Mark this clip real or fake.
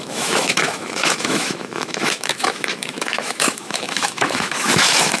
fake